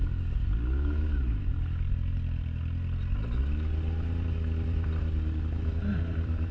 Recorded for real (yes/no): yes